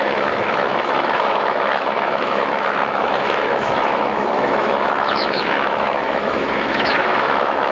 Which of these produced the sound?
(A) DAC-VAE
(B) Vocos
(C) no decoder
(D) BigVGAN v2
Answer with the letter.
A